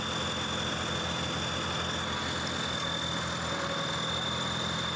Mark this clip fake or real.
real